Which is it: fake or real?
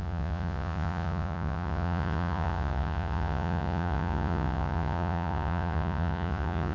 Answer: fake